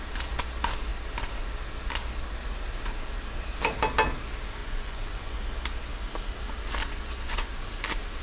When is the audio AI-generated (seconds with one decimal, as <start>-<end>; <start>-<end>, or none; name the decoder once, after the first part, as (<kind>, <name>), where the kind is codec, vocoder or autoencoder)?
4.6-5.4 (vocoder, Vocos); 6.8-7.5